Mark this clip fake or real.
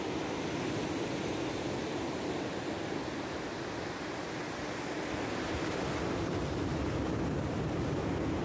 real